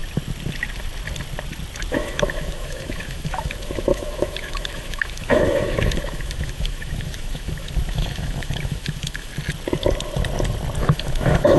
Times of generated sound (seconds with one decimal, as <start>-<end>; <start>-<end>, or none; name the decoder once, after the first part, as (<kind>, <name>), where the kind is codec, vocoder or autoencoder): 1.9-9.3 (autoencoder, DAC-VAE); 10.8-11.6